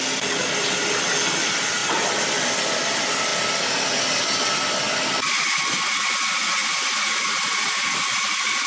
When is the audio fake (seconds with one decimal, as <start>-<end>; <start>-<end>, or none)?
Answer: 1.8-2.7; 3.3-4.0